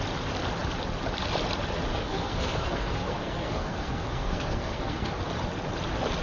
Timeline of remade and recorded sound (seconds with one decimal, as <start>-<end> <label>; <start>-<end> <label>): 0.0-1.9 recorded; 1.9-5.1 remade; 5.1-6.2 recorded